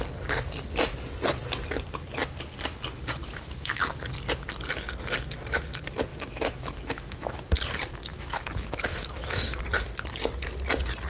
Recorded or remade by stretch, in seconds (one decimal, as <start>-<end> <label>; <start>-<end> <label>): 0.0-3.2 recorded; 3.2-3.8 remade; 3.8-6.1 recorded; 6.1-7.5 remade; 7.5-8.1 recorded; 8.1-9.6 remade; 9.6-11.1 recorded